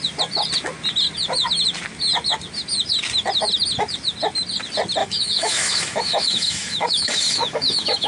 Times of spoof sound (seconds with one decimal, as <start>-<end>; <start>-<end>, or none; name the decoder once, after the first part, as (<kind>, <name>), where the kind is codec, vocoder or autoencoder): 5.0-8.1 (autoencoder, DAC-VAE)